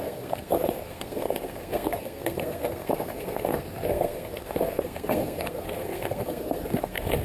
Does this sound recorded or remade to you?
remade